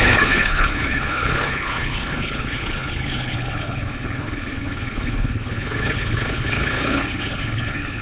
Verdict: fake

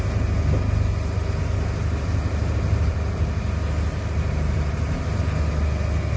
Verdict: real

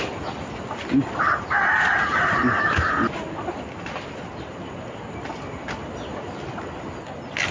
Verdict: real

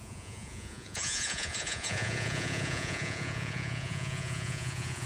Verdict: fake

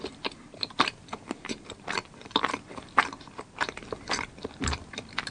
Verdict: fake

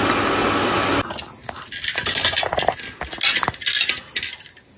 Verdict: real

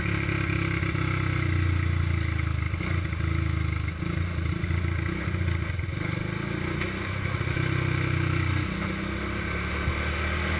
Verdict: real